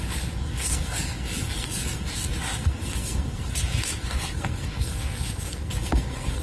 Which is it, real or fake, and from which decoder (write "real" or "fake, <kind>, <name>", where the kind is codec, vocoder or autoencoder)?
fake, codec, SNAC